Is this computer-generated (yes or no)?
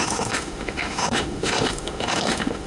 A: yes